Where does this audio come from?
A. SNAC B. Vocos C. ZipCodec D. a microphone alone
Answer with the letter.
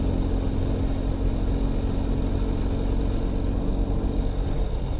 D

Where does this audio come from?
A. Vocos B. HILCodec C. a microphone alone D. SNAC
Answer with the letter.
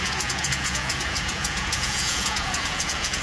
A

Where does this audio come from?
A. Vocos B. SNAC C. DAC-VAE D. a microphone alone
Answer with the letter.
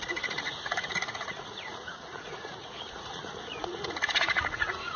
A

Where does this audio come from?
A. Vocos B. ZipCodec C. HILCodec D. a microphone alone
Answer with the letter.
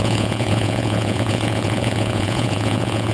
A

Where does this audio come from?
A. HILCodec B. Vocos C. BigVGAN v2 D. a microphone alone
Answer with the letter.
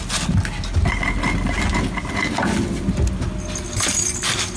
D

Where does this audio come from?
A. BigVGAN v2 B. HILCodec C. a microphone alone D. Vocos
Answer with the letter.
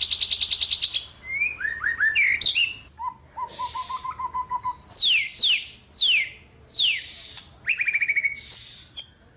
C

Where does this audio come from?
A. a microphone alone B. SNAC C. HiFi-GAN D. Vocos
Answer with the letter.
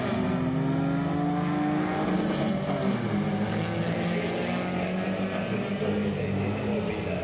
A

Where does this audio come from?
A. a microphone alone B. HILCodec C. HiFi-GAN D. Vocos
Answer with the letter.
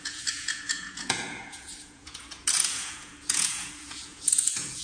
D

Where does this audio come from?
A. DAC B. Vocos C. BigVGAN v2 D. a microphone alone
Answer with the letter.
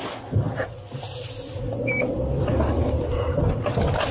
D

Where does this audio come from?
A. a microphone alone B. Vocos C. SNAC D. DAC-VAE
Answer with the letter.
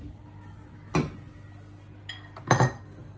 A